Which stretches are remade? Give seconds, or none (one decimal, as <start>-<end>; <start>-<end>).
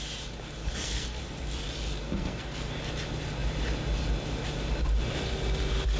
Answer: 0.6-1.2; 2.0-2.7